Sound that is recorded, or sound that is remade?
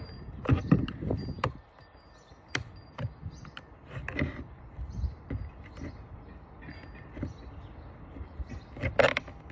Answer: recorded